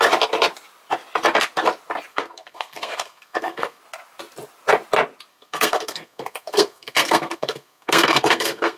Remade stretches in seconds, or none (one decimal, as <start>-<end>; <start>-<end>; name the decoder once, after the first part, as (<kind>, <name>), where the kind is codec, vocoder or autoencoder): 2.1-3.8 (codec, SNAC); 5.3-8.8